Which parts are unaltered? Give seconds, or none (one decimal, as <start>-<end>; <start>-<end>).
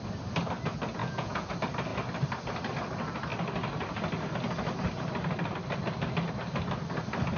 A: 0.0-1.0; 1.5-7.4